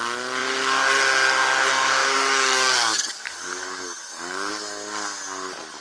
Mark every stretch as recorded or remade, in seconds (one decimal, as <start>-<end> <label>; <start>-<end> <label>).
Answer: 0.0-2.0 recorded; 2.0-4.5 remade; 4.5-5.8 recorded